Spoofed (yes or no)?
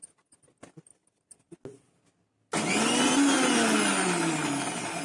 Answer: no